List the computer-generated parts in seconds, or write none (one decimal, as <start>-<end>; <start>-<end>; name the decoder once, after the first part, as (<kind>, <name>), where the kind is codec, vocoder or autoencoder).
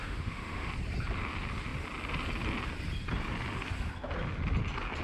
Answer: 0.0-0.7 (autoencoder, DAC-VAE)